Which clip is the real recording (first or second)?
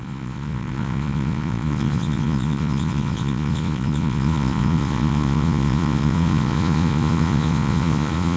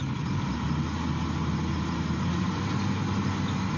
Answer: second